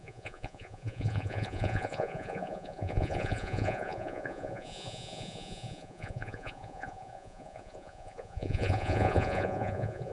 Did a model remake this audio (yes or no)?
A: yes